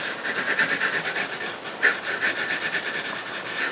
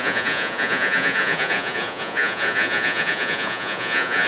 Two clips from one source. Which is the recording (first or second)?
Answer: first